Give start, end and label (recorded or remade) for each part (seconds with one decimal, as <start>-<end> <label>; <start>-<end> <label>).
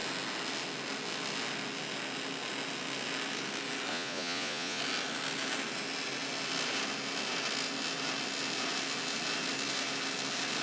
0.0-3.9 recorded; 3.9-4.8 remade; 4.8-10.6 recorded